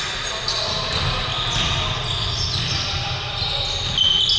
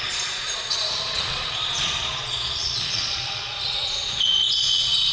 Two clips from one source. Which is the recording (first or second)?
first